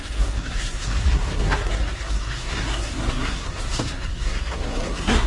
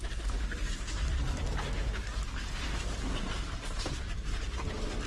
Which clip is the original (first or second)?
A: second